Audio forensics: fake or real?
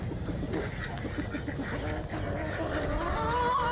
real